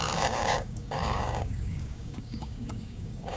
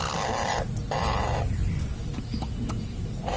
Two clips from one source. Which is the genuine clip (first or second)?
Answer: second